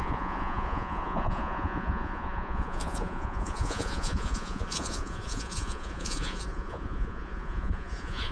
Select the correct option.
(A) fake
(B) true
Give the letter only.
A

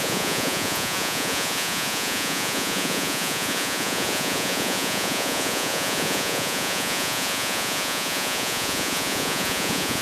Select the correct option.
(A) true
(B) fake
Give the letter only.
B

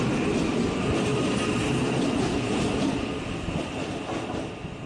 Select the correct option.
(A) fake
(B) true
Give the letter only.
B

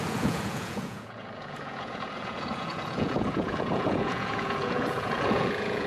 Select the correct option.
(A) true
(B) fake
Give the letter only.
B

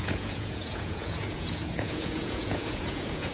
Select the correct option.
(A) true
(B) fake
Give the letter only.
B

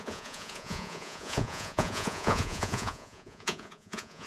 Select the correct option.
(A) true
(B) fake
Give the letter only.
B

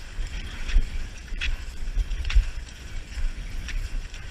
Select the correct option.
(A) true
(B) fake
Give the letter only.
B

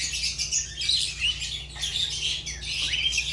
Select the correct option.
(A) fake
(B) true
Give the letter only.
B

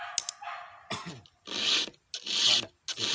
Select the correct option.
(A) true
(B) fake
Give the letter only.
A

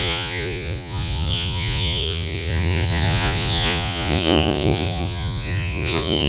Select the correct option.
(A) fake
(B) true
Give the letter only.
A